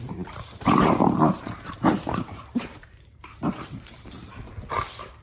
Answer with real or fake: fake